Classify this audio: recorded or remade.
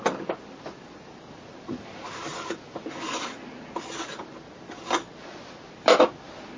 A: recorded